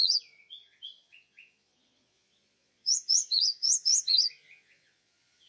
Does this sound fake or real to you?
fake